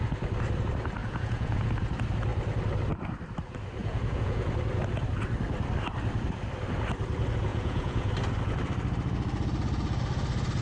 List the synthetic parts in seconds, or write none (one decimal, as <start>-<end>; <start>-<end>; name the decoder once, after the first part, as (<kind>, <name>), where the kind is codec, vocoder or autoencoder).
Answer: 1.0-1.7 (vocoder, Vocos); 3.8-4.5; 7.5-8.1